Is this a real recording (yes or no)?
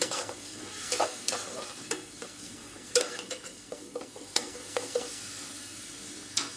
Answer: no